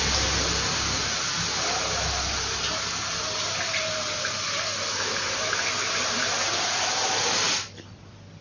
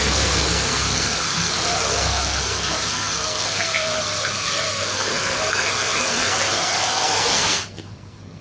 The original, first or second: first